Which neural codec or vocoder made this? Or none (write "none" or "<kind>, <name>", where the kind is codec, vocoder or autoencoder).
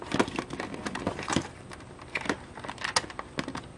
none